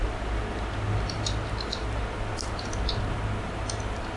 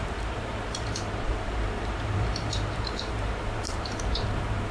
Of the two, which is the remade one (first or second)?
second